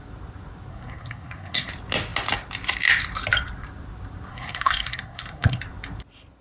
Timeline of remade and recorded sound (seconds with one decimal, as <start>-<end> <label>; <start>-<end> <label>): 0.0-0.7 recorded; 0.7-1.7 remade; 1.7-4.3 recorded; 4.3-5.6 remade; 5.6-6.4 recorded